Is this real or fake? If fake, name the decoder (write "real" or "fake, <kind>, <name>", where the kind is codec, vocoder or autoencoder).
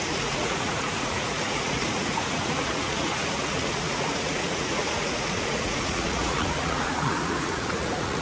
fake, vocoder, Vocos